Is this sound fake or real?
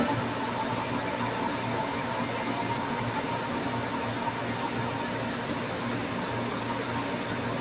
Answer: real